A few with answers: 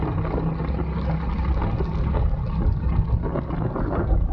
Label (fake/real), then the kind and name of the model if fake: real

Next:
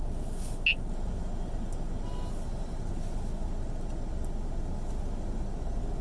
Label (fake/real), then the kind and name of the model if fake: real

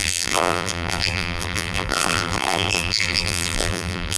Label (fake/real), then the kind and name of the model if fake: fake, vocoder, BigVGAN v2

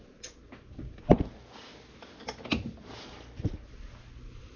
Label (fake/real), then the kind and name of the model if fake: real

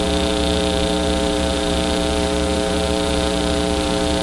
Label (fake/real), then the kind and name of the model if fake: fake, vocoder, BigVGAN v2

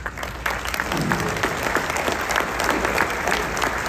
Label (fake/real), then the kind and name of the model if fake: real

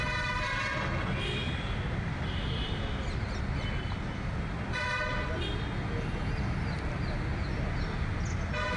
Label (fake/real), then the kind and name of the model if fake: real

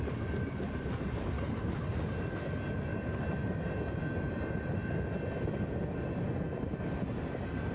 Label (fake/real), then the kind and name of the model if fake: real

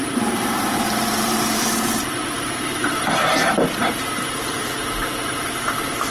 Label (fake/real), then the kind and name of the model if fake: fake, vocoder, BigVGAN v2